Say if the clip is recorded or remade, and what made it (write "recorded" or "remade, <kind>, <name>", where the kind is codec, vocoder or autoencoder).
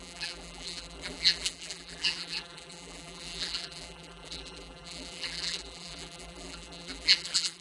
remade, vocoder, BigVGAN v2